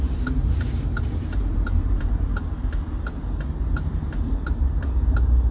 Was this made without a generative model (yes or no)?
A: no